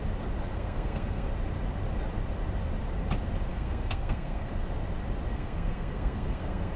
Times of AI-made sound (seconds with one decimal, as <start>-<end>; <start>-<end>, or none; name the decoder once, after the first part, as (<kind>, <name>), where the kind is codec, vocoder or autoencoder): 0.5-1.3 (codec, SNAC); 3.5-4.5; 5.3-6.8